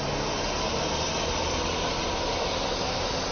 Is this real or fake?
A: real